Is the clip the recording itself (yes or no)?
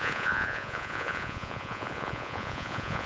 no